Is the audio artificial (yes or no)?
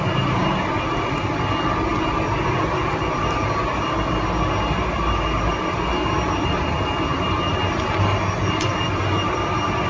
no